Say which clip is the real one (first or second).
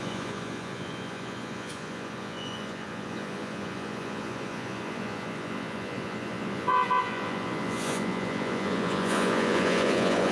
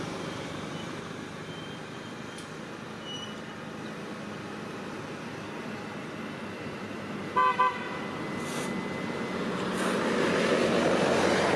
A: second